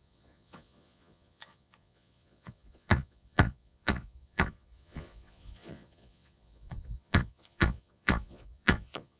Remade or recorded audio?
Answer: remade